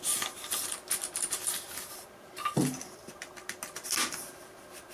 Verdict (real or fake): real